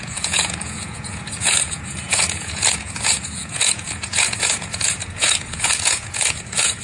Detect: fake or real fake